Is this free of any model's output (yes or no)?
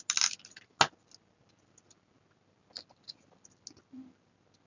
yes